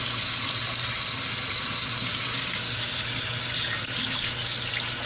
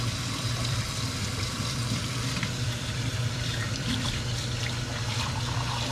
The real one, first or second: first